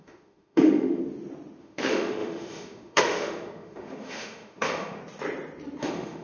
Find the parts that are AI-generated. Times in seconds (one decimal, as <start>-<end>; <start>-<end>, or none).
0.0-1.0; 1.6-5.0; 5.8-6.2